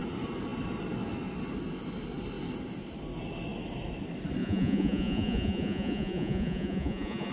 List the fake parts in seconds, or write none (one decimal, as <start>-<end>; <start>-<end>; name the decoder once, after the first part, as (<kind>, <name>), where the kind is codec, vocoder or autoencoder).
4.4-7.3 (vocoder, Vocos)